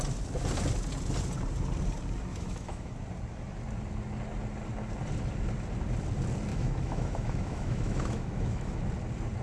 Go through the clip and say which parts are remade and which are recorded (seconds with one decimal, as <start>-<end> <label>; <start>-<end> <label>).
0.0-2.3 recorded; 2.3-2.9 remade; 2.9-6.5 recorded; 6.5-8.8 remade; 8.8-9.4 recorded